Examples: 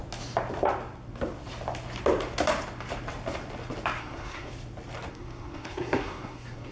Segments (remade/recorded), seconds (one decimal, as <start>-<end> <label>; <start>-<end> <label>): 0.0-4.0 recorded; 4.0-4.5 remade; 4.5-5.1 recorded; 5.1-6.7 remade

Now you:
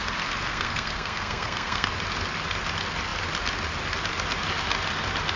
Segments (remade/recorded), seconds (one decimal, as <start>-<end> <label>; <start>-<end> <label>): 0.0-0.5 recorded; 0.5-1.9 remade; 1.9-5.4 recorded

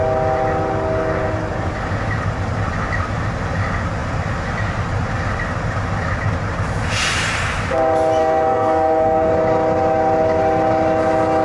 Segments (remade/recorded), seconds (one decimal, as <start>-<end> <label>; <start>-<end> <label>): 0.0-8.2 recorded; 8.2-9.3 remade; 9.3-11.4 recorded

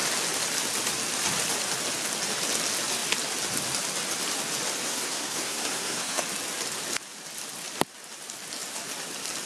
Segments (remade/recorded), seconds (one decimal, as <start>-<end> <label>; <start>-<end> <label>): 0.0-4.8 recorded; 4.8-6.2 remade; 6.2-9.5 recorded

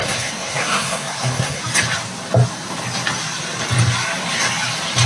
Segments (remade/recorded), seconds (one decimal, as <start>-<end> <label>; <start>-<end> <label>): 0.0-1.6 remade; 1.6-5.1 recorded